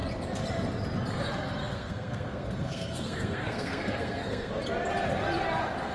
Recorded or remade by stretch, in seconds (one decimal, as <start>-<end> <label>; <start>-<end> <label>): 0.0-1.6 recorded; 1.6-4.5 remade; 4.5-5.9 recorded

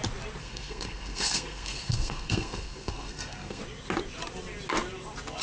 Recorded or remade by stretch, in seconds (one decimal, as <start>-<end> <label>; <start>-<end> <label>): 0.0-0.4 recorded; 0.4-3.6 remade; 3.6-5.4 recorded

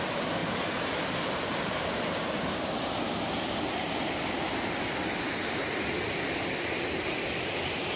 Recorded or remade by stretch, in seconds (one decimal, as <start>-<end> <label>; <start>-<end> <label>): 0.0-8.0 recorded

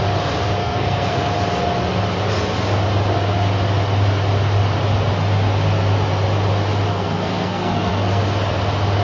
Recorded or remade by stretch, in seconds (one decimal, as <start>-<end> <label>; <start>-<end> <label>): 0.0-0.6 recorded; 0.6-1.3 remade; 1.3-6.9 recorded; 6.9-8.2 remade; 8.2-9.0 recorded

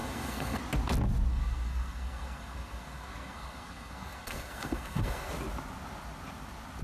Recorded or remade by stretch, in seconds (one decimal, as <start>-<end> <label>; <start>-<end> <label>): 0.0-0.6 remade; 0.6-1.3 recorded; 1.3-5.3 remade; 5.3-6.8 recorded

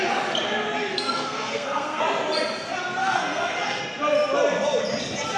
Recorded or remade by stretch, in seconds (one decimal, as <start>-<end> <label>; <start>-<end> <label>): 0.0-0.9 recorded; 0.9-2.0 remade; 2.0-3.0 recorded; 3.0-3.8 remade; 3.8-5.4 recorded